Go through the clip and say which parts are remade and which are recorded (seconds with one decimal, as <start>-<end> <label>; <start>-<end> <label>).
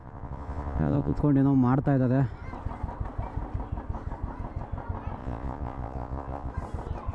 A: 0.0-1.2 remade; 1.2-5.2 recorded; 5.2-6.5 remade; 6.5-7.1 recorded